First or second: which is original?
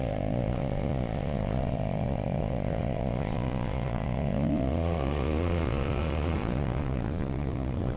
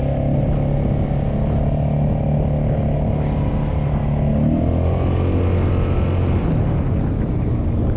second